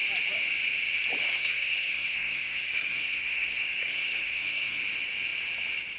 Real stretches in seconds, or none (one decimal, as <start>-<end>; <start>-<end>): 0.0-1.2; 4.8-6.0